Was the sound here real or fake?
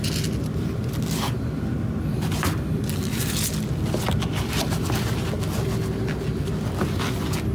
real